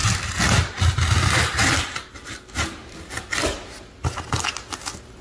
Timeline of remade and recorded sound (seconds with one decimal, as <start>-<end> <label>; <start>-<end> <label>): 0.0-5.2 recorded